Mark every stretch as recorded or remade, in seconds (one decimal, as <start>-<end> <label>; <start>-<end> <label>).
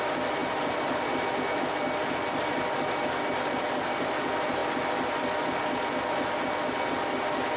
0.0-7.6 recorded